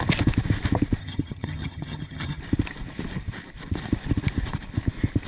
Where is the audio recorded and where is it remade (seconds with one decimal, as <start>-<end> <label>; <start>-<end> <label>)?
0.0-1.0 recorded; 1.0-2.4 remade; 2.4-5.3 recorded